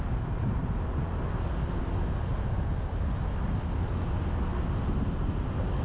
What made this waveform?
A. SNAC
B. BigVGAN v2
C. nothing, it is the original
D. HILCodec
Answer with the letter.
C